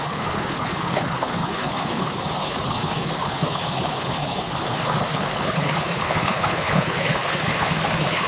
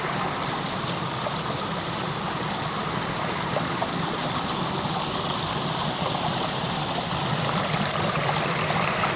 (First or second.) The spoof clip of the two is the first